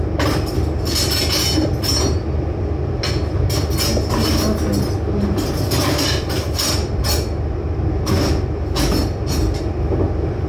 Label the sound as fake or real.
real